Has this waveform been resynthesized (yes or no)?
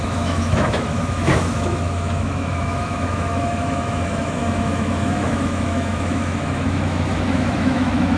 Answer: yes